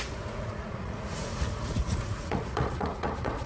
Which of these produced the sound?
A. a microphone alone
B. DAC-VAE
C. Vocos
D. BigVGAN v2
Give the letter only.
C